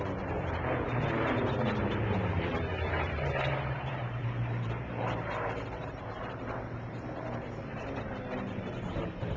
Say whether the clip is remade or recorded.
remade